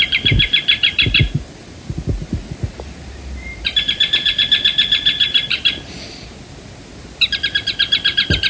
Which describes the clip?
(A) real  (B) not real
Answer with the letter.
A